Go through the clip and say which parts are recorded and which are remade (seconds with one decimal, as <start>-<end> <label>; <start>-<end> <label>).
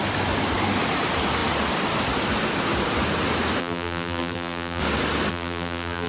0.0-3.6 recorded; 3.6-4.8 remade; 4.8-5.3 recorded; 5.3-6.1 remade